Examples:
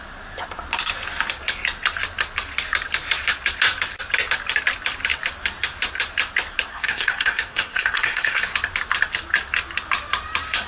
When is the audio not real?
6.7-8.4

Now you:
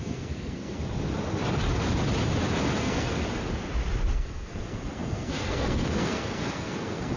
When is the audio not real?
0.0-0.8; 2.8-3.2; 4.1-7.2